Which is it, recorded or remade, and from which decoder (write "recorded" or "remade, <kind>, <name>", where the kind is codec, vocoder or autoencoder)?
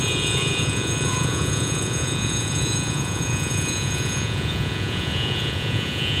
remade, vocoder, Vocos